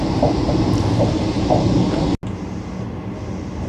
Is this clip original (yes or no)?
yes